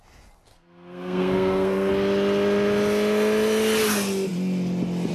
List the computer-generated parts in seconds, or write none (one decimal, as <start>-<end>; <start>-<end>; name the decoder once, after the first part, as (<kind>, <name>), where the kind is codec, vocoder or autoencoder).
0.5-1.9 (codec, SNAC)